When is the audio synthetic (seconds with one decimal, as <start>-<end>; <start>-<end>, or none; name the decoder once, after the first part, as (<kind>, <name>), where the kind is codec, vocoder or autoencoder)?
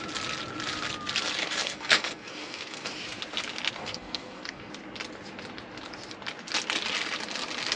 1.4-2.9 (codec, SNAC); 3.8-4.7